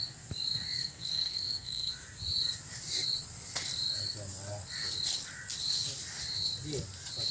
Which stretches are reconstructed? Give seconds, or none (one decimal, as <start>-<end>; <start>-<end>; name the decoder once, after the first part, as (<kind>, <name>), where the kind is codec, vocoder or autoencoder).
0.8-1.9 (codec, SNAC)